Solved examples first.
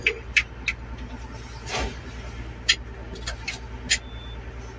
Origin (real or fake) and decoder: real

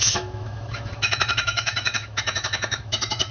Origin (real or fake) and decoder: fake, autoencoder, DAC-VAE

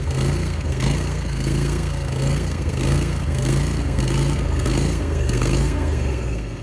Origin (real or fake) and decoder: fake, codec, SNAC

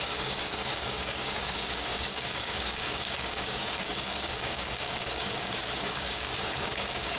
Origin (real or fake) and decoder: fake, codec, DAC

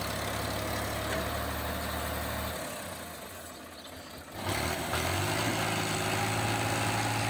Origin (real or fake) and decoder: real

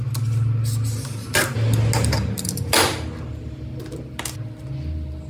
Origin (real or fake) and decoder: real